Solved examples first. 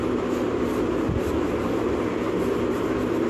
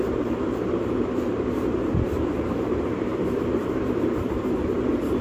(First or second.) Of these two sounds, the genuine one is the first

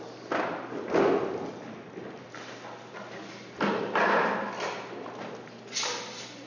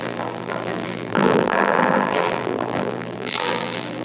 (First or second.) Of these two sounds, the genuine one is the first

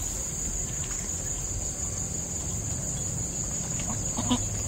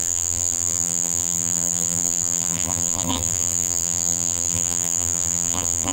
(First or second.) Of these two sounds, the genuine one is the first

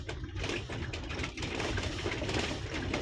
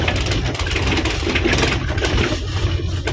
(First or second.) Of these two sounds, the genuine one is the second